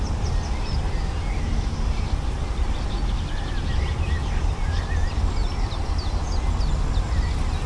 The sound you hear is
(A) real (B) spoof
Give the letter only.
A